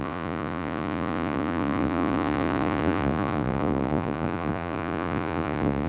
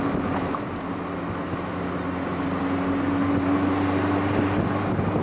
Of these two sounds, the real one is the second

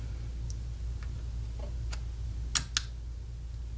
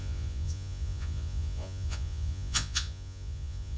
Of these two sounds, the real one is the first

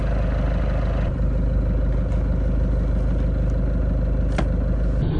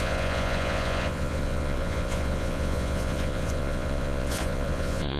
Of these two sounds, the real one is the first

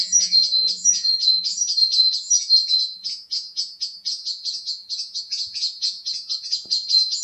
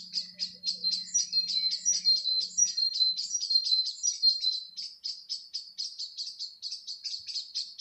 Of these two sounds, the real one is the second